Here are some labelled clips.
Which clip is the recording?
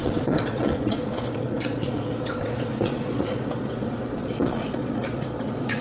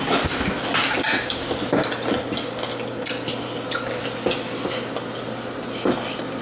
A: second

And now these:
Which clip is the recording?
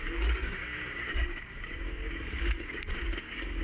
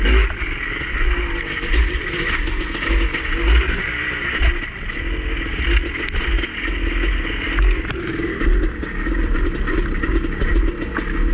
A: second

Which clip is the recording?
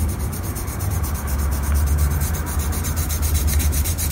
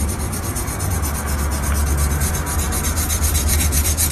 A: second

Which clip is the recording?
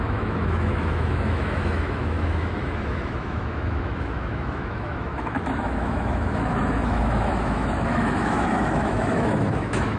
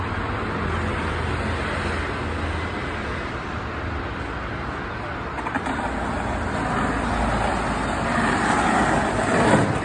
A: second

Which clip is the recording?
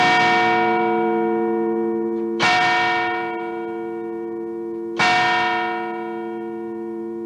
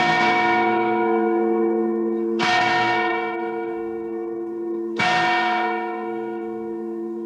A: first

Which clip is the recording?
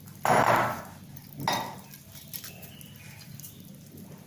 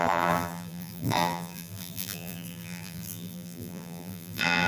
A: first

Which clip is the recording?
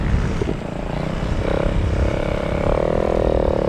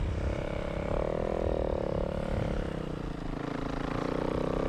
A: second